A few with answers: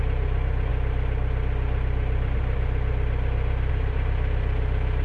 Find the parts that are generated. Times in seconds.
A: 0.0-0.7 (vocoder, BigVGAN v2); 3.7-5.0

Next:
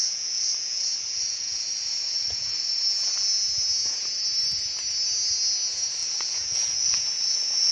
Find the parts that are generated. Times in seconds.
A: 0.0-2.8 (vocoder, Vocos); 6.0-7.7

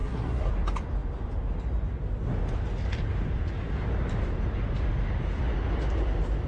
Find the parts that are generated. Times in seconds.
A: 0.0-0.5 (codec, SNAC)

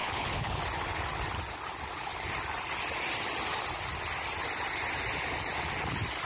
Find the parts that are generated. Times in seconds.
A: 0.0-0.6 (codec, HILCodec)

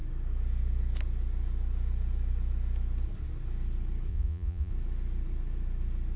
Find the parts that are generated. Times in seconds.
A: 4.1-4.7 (vocoder, Vocos)